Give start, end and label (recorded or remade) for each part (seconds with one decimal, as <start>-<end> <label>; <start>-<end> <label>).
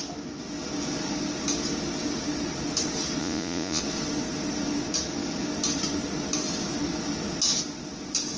0.0-3.2 recorded; 3.2-3.8 remade; 3.8-8.4 recorded